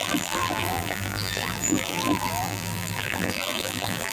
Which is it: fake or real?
fake